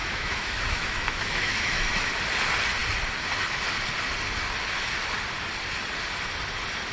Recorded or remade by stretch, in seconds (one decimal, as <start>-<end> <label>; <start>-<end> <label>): 0.0-2.1 remade; 2.1-6.9 recorded

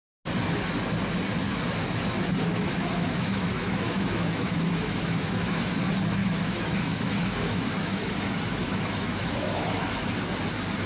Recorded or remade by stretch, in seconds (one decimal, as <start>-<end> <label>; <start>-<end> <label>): 0.0-2.5 recorded; 2.5-5.8 remade; 5.8-6.2 recorded; 6.2-8.1 remade; 8.1-8.6 recorded; 8.6-9.9 remade; 9.9-10.9 recorded

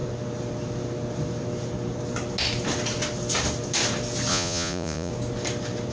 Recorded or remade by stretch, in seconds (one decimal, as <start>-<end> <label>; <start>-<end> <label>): 0.0-4.3 recorded; 4.3-5.1 remade; 5.1-5.9 recorded

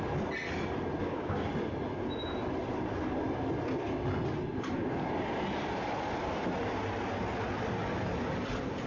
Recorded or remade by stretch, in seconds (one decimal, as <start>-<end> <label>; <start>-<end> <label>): 0.0-1.0 recorded; 1.0-1.5 remade; 1.5-8.9 recorded

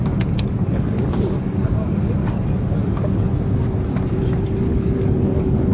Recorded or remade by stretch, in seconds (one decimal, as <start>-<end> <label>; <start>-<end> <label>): 0.0-2.2 remade; 2.2-2.8 recorded; 2.8-3.3 remade; 3.3-4.2 recorded; 4.2-5.7 remade

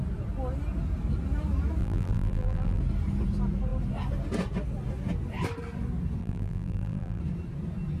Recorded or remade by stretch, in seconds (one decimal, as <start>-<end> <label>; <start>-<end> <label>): 0.0-1.8 recorded; 1.8-2.8 remade; 2.8-6.2 recorded; 6.2-7.2 remade; 7.2-8.0 recorded